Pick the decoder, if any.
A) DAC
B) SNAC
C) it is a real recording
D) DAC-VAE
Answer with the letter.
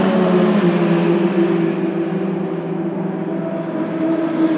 C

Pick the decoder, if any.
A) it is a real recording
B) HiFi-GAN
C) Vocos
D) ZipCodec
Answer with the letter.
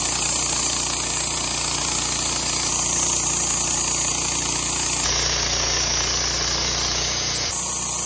A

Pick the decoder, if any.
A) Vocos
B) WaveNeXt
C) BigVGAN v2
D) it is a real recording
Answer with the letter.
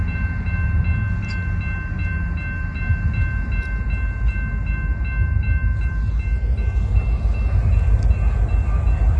D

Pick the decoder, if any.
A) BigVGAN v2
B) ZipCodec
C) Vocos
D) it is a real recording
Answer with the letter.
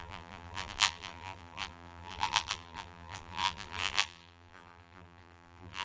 A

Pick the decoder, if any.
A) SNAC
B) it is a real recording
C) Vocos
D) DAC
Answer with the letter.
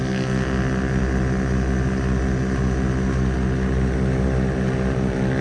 B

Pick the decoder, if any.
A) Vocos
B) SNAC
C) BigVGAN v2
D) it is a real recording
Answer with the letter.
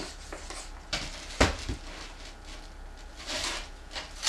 D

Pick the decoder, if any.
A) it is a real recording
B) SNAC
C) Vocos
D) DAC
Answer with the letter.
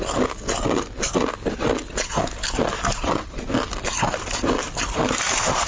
A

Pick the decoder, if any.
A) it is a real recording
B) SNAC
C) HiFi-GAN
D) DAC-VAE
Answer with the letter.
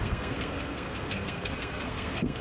B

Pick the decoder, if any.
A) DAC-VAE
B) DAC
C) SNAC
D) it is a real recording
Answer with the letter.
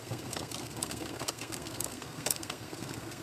C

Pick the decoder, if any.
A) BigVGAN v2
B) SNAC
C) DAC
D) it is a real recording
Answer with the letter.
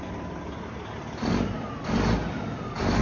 D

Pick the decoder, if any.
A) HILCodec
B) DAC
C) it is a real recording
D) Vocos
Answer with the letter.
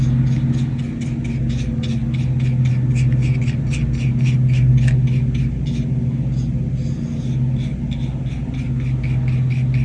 C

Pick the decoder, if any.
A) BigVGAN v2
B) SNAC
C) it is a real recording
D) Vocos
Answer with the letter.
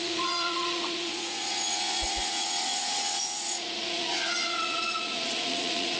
D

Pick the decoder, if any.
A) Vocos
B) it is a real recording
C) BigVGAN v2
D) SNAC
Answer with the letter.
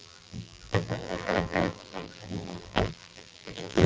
C